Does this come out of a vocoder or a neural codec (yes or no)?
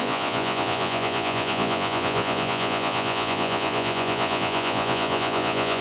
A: yes